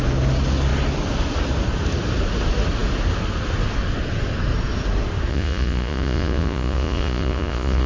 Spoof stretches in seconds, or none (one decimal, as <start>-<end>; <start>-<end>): 5.3-7.9